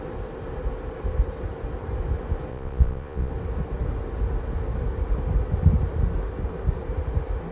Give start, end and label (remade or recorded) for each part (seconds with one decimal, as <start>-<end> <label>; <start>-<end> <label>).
0.0-2.5 recorded; 2.5-3.3 remade; 3.3-7.5 recorded